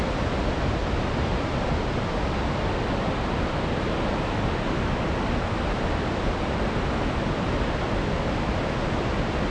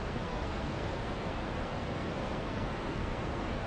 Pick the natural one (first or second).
first